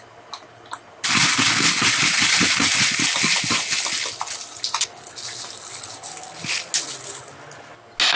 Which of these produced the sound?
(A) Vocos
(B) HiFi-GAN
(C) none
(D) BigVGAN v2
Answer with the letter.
C